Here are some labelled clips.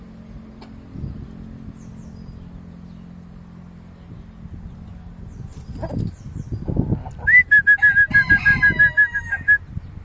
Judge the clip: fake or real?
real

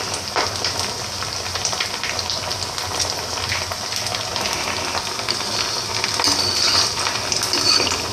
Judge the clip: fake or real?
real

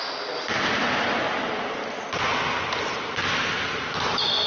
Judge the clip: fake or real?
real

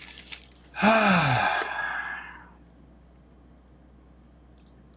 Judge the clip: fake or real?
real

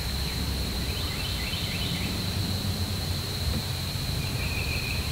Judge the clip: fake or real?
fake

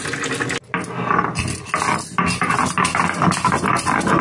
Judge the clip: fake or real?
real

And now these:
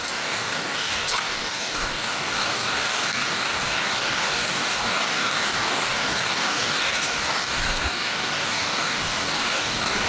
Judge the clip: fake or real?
fake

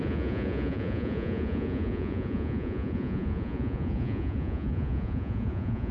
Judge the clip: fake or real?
fake